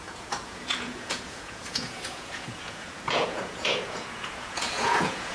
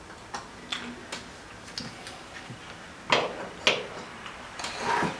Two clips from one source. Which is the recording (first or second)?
second